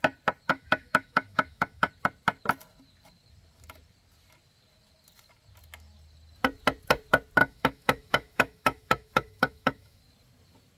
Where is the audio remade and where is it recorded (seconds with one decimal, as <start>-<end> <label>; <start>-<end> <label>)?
0.0-0.5 recorded; 0.5-1.9 remade; 1.9-7.4 recorded; 7.4-10.0 remade; 10.0-10.8 recorded